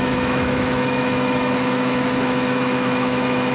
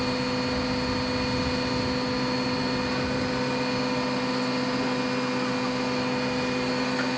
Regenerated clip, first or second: first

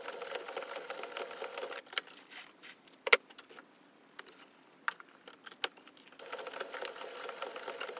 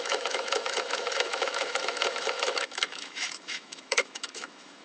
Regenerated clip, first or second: second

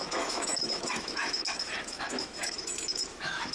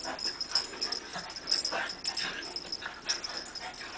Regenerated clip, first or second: first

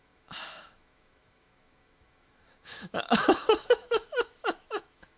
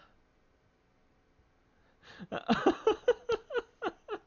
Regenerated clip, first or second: first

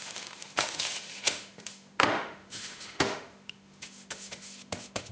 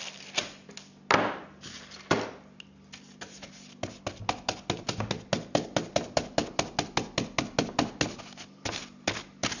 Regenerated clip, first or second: first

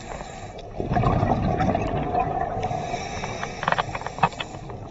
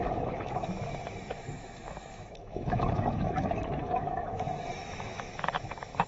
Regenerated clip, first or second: second